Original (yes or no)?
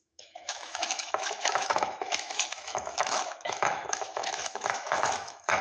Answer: no